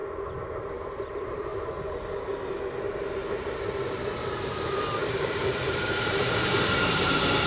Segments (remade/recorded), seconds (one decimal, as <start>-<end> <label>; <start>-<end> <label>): 0.0-0.7 recorded; 0.7-1.5 remade; 1.5-3.1 recorded; 3.1-7.5 remade